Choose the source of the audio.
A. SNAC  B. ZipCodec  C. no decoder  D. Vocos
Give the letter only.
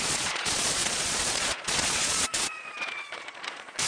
D